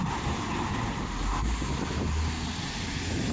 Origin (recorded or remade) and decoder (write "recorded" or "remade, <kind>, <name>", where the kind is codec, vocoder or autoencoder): recorded